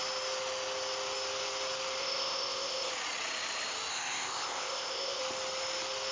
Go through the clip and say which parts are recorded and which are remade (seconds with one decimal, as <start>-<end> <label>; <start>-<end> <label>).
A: 0.0-2.0 recorded; 2.0-2.9 remade; 2.9-3.9 recorded; 3.9-5.2 remade; 5.2-6.1 recorded